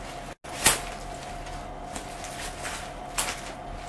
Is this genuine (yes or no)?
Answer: yes